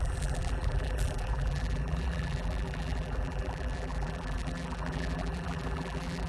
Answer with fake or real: fake